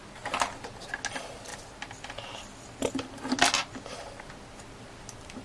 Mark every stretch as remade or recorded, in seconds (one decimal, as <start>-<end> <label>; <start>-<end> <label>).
0.0-5.4 recorded

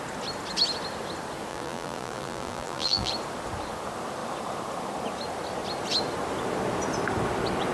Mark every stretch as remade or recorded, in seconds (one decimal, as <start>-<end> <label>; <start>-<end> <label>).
0.0-1.5 recorded; 1.5-3.1 remade; 3.1-7.7 recorded

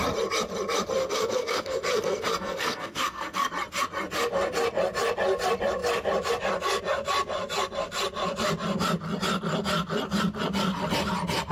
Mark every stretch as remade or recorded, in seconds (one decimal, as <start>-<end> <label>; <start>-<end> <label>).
0.0-1.0 recorded; 1.0-3.5 remade; 3.5-11.5 recorded

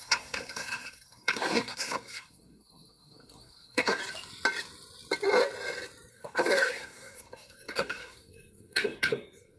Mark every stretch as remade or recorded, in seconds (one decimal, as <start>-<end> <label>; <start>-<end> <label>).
0.0-4.0 remade; 4.0-6.1 recorded; 6.1-9.6 remade

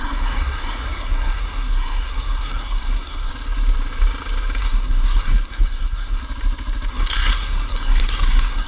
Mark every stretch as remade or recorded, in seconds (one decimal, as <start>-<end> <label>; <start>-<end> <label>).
0.0-3.3 remade; 3.3-4.6 recorded; 4.6-6.2 remade; 6.2-6.9 recorded; 6.9-8.7 remade